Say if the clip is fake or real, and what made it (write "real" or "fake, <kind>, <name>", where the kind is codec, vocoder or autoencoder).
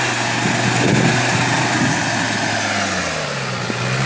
real